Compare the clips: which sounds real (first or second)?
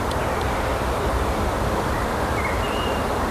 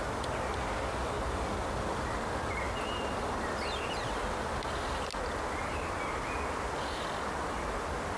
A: second